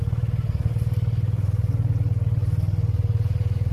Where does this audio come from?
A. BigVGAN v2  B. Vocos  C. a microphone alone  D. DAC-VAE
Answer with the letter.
C